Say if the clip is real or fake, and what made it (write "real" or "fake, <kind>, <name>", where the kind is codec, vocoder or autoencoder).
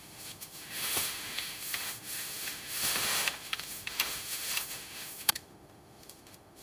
fake, autoencoder, DAC-VAE